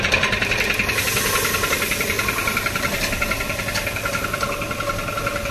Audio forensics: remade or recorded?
recorded